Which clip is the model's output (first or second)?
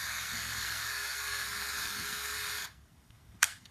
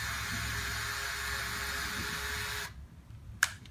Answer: first